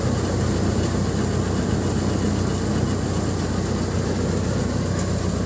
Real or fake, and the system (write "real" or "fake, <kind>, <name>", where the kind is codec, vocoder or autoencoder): real